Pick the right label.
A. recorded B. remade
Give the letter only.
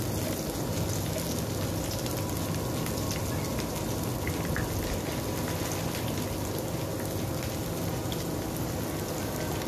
A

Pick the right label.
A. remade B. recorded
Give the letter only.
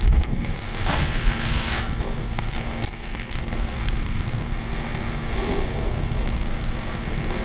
A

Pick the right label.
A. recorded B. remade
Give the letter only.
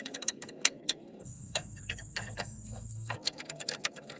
B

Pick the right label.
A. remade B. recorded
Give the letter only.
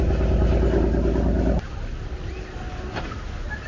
B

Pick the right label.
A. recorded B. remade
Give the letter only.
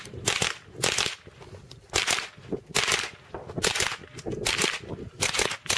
A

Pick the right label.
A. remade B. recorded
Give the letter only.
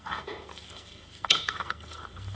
A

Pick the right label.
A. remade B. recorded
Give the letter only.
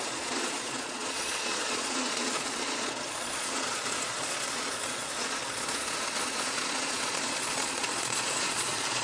A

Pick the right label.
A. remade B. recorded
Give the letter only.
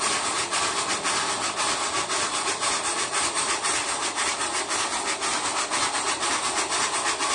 B